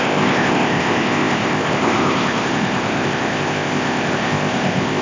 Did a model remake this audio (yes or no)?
yes